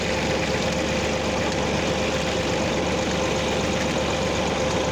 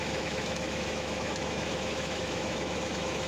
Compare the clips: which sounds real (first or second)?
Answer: first